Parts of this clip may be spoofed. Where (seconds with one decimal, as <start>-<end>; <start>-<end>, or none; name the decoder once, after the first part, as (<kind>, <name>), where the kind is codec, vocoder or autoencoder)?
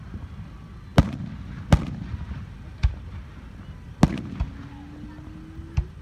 none